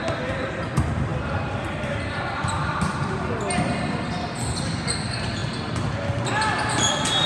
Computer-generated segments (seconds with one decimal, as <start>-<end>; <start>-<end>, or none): none